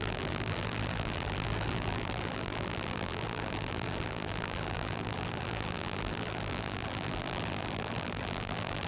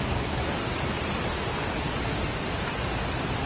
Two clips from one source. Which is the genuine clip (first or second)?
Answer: second